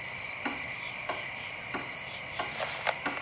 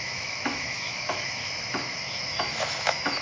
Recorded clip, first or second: first